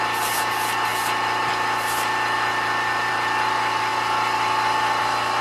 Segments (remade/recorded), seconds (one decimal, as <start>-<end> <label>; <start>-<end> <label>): 0.0-5.4 recorded